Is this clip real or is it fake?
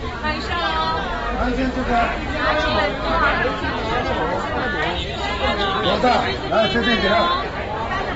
real